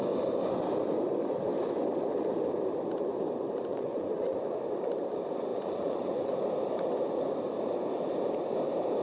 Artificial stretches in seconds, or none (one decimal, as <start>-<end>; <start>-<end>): 3.7-4.4; 5.5-6.3